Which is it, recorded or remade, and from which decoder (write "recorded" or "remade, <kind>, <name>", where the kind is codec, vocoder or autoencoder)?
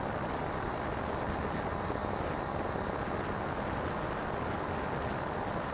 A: recorded